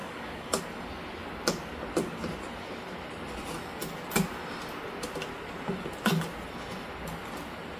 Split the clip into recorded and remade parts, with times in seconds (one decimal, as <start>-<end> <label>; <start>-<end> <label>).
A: 0.0-0.6 remade; 0.6-7.8 recorded